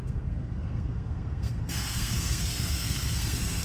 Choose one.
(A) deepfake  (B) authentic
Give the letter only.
A